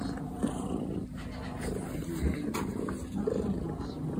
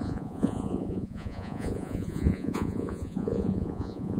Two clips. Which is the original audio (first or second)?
first